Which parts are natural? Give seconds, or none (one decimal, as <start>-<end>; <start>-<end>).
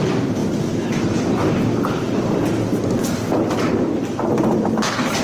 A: 0.0-5.2